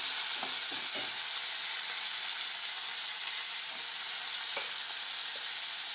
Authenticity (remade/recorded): recorded